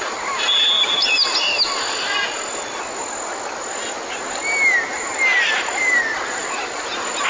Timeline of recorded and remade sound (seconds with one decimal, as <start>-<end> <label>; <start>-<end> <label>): 0.0-1.2 remade; 1.2-5.6 recorded; 5.6-7.3 remade